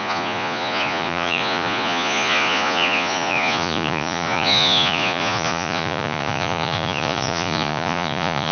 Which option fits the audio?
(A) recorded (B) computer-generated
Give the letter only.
B